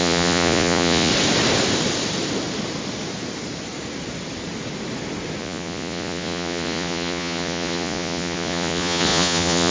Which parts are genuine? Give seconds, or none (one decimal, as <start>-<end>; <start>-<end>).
1.1-5.4